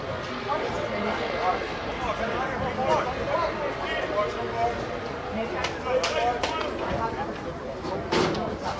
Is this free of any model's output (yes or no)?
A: yes